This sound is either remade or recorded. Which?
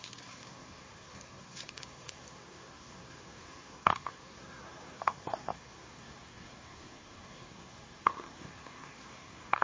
remade